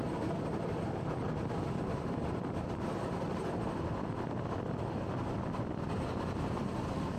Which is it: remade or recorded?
recorded